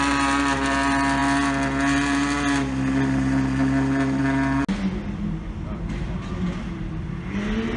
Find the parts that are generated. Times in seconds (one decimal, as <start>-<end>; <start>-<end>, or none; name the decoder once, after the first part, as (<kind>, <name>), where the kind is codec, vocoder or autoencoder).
none